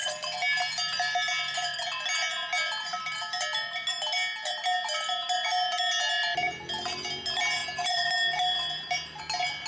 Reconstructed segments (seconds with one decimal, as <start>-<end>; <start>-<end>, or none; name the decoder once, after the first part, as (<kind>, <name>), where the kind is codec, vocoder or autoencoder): none